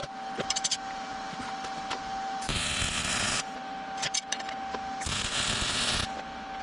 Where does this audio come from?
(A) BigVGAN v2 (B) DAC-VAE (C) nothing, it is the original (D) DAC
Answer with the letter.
C